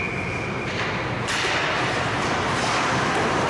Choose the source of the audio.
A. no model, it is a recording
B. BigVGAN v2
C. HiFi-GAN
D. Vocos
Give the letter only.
A